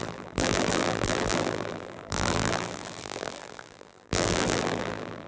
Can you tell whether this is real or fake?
fake